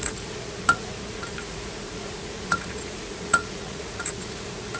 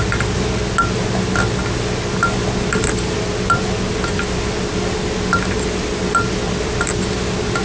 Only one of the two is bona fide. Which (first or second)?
second